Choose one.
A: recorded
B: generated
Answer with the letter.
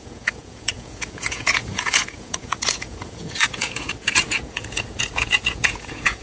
B